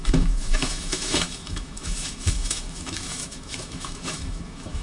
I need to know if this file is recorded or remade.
remade